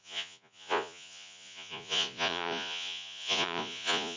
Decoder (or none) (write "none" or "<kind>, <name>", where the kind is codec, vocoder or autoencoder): vocoder, Vocos